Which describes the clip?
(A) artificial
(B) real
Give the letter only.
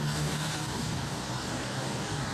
A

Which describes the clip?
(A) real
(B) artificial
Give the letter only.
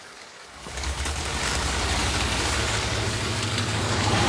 B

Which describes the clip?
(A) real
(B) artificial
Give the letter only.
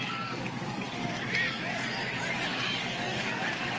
B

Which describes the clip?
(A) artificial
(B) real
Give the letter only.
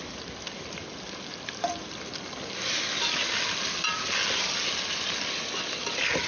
B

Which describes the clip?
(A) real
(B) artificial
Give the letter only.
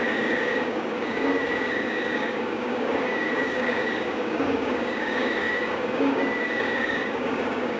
B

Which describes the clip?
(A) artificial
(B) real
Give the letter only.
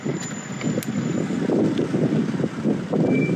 B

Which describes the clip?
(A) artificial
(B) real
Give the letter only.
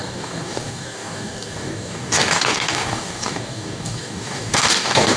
A